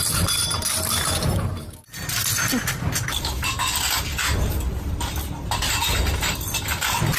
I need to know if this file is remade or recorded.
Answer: recorded